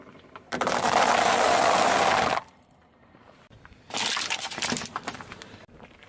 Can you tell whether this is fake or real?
fake